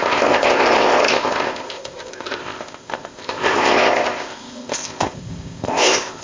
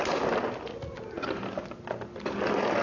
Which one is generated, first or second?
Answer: first